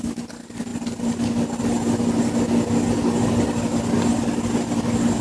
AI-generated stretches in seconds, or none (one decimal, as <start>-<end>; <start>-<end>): none